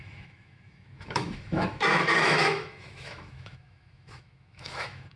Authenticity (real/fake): fake